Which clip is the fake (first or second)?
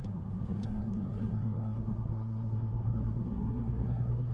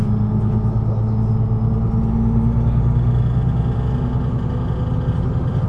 first